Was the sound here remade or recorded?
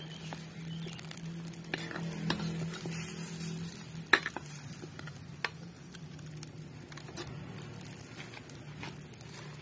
recorded